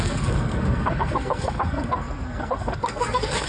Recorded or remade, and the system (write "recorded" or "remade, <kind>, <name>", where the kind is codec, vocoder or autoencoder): remade, codec, SNAC